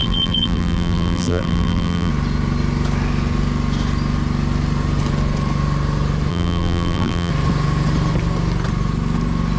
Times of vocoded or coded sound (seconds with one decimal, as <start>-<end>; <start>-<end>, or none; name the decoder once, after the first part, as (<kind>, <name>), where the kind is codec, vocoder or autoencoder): 0.0-2.1 (vocoder, BigVGAN v2); 6.3-7.3